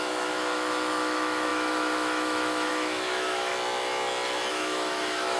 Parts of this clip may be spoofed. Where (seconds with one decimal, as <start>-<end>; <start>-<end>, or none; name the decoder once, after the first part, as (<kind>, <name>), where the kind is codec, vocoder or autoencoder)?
0.0-3.5 (autoencoder, DAC-VAE); 4.5-5.4